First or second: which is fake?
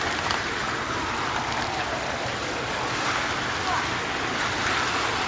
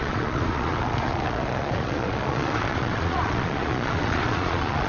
second